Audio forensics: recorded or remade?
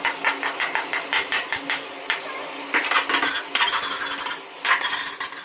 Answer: recorded